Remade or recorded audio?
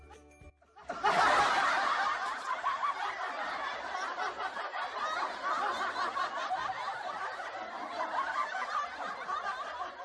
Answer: recorded